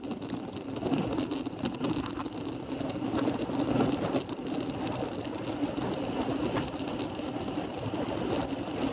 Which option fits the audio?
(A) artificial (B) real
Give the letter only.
B